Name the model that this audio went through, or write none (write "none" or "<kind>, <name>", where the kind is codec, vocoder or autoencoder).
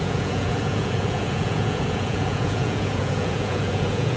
vocoder, Vocos